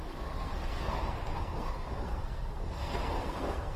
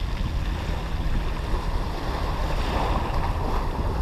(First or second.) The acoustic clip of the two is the second